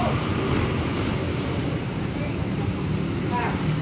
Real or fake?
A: fake